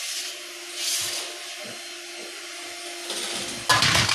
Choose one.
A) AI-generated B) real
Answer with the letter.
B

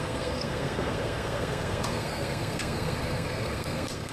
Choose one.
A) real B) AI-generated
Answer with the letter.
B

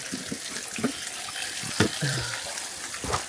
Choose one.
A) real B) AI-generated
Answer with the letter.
A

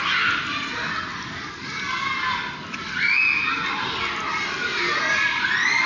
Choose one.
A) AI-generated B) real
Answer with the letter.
B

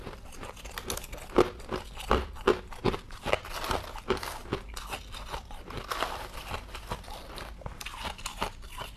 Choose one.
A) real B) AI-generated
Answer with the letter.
A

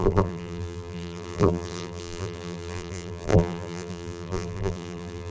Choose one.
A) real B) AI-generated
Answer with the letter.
B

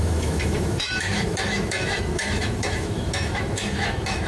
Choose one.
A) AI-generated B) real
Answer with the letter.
A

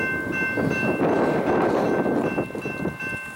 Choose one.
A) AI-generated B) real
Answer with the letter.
B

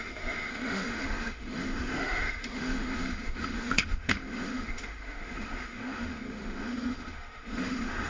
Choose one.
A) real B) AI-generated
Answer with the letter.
B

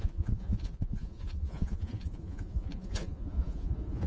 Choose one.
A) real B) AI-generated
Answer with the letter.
B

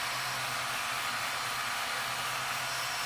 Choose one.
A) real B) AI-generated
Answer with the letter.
A